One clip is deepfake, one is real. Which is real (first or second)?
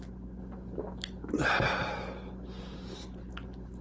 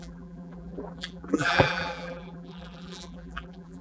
first